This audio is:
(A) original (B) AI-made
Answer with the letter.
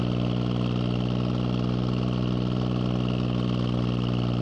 A